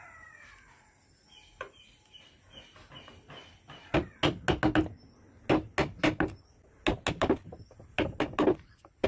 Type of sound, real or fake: real